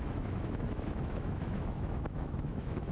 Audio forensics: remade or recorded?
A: remade